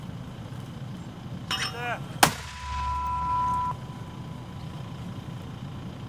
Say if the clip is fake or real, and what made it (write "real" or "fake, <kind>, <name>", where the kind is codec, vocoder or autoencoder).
real